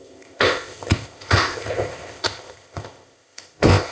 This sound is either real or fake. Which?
fake